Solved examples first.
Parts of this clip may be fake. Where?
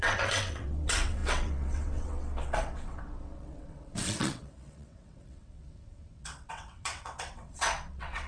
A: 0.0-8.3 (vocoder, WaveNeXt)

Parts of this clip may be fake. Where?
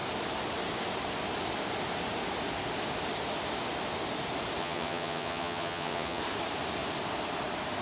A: 4.6-6.2 (vocoder, HiFi-GAN)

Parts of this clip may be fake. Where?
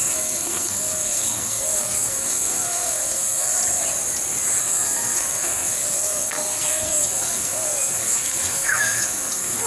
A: 0.0-3.6 (codec, SNAC); 4.6-9.7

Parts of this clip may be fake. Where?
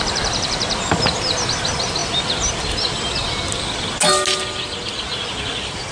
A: none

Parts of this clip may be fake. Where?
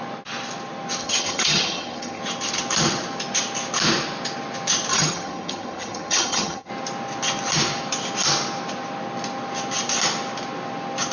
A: 1.0-2.2 (vocoder, HiFi-GAN); 4.9-6.7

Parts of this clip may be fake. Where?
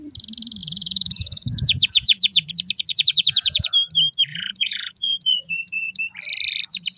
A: 0.6-2.5 (vocoder, Vocos); 2.9-3.7; 4.3-6.0